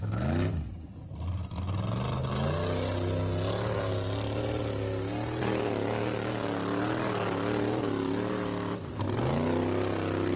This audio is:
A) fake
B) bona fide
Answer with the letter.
B